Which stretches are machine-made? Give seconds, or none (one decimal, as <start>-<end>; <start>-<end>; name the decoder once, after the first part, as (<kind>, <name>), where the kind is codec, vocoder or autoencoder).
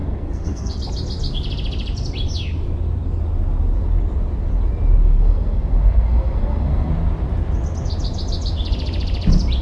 0.0-0.8 (codec, SNAC); 5.0-6.9